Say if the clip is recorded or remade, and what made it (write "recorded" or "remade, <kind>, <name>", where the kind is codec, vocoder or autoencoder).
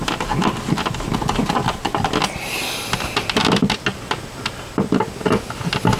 recorded